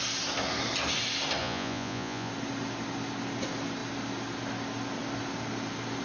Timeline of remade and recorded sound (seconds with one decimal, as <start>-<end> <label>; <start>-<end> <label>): 0.0-1.4 recorded; 1.4-2.3 remade; 2.3-6.0 recorded